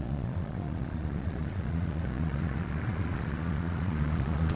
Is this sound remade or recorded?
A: remade